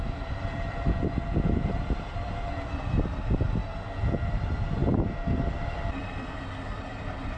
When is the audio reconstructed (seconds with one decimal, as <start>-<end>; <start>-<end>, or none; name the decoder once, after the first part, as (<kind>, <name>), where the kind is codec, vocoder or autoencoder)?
0.0-3.6 (vocoder, BigVGAN v2); 4.3-4.8; 5.3-7.4